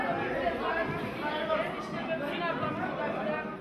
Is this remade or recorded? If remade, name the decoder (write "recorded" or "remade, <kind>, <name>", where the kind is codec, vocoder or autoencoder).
recorded